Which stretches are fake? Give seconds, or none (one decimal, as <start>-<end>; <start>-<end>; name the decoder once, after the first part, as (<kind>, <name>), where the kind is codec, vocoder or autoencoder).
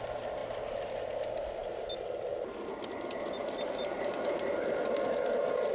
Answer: none